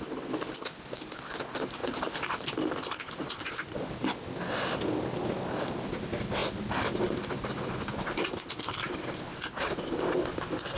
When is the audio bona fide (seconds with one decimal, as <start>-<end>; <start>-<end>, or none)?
0.0-10.8